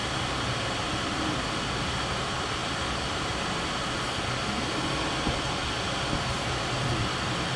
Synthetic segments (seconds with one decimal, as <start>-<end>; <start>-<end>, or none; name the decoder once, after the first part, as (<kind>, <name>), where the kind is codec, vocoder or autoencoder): none